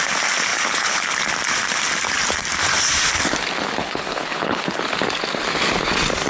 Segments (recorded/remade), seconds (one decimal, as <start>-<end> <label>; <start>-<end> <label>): 0.0-0.5 recorded; 0.5-1.1 remade; 1.1-3.8 recorded; 3.8-4.8 remade; 4.8-6.3 recorded